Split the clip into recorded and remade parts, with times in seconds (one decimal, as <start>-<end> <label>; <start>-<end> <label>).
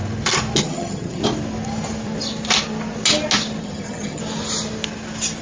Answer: 0.0-0.6 recorded; 0.6-1.2 remade; 1.2-3.6 recorded; 3.6-4.2 remade; 4.2-5.4 recorded